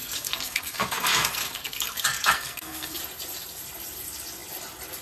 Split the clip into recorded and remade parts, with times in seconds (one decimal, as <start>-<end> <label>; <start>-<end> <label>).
0.0-3.0 remade; 3.0-5.0 recorded